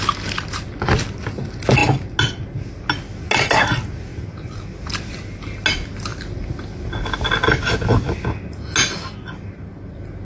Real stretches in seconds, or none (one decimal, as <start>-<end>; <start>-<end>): 0.0-10.2